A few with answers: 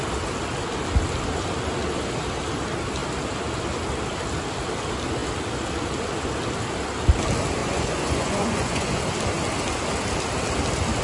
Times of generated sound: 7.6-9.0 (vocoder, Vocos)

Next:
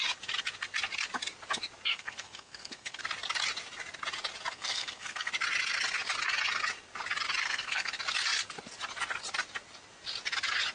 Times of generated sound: 1.9-3.0 (codec, SNAC); 4.5-5.3; 7.4-7.9

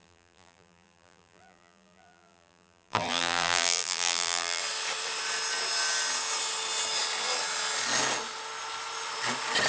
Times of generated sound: 0.0-4.6 (vocoder, BigVGAN v2)

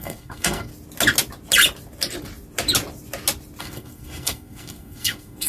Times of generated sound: 0.0-0.7 (codec, SNAC); 3.6-5.5

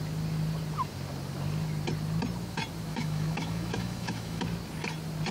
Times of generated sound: 2.9-4.4 (autoencoder, DAC-VAE)

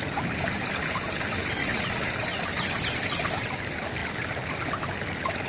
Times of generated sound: 1.6-2.1 (vocoder, Vocos)

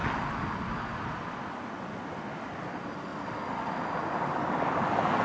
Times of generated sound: none

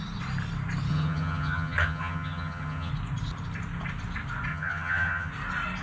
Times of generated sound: 0.9-2.9 (vocoder, HiFi-GAN); 4.5-5.3